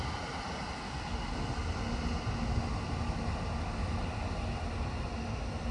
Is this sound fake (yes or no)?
no